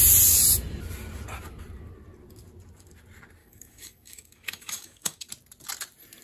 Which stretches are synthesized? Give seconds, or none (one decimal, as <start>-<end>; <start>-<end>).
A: 3.4-5.3